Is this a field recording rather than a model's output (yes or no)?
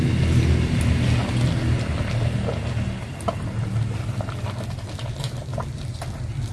yes